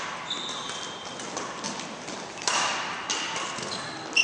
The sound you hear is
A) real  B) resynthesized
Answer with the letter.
A